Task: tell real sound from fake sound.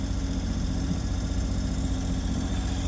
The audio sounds fake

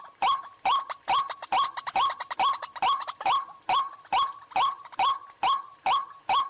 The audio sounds fake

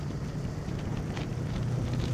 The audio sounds fake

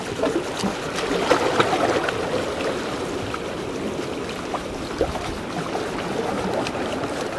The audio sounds real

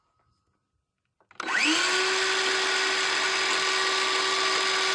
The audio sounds real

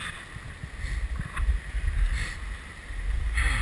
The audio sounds real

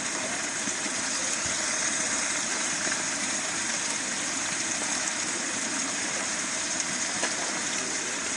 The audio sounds fake